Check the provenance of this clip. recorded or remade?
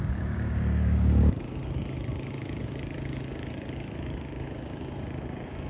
remade